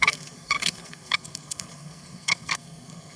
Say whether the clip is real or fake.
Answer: fake